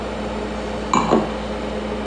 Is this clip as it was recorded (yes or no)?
yes